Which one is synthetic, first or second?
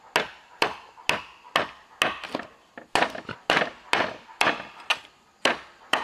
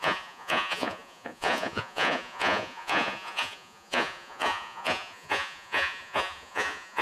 second